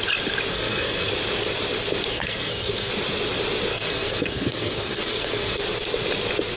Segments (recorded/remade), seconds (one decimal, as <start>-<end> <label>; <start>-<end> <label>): 0.0-0.5 recorded; 0.5-1.1 remade; 1.1-2.1 recorded; 2.1-2.9 remade; 2.9-3.7 recorded; 3.7-5.6 remade; 5.6-6.6 recorded